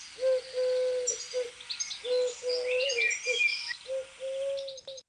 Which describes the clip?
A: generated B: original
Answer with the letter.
B